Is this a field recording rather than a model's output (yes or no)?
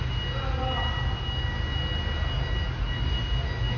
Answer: yes